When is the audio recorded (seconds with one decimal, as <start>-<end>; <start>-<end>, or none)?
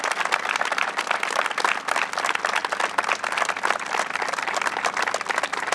0.0-5.7